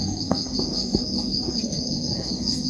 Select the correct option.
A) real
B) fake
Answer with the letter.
B